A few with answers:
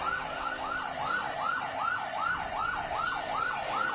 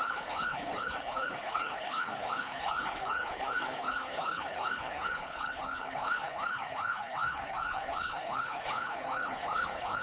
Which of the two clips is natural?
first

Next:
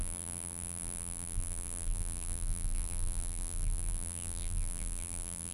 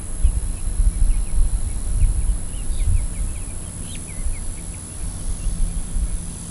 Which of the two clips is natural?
second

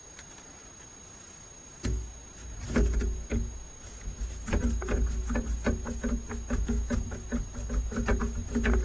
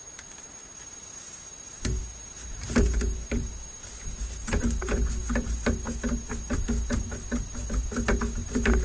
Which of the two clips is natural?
first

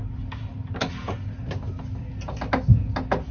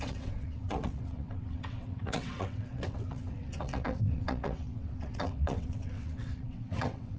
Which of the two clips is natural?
first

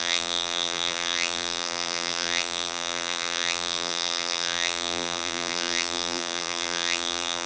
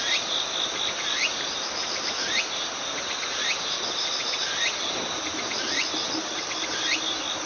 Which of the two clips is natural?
second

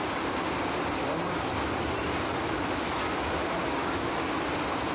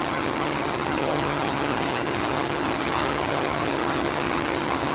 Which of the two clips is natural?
first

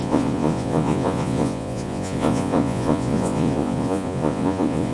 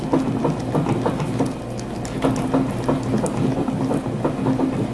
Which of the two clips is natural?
second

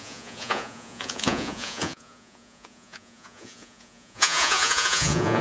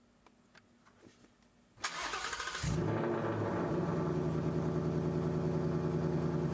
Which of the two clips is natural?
second